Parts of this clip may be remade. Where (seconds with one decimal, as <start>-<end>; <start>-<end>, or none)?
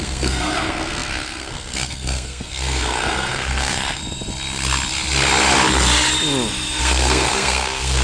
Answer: 0.0-4.0; 6.8-8.0